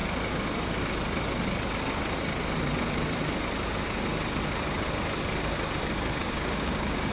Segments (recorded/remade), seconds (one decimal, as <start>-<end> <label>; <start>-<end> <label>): 0.0-6.2 recorded; 6.2-7.1 remade